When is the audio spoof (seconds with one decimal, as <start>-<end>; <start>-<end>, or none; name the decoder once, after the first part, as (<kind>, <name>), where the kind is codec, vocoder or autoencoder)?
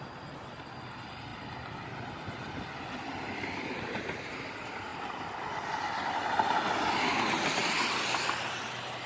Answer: none